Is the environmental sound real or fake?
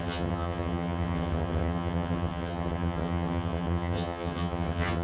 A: fake